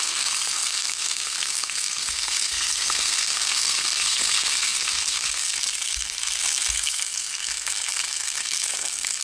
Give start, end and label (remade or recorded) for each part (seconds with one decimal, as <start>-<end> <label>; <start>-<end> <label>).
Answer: 0.0-9.2 remade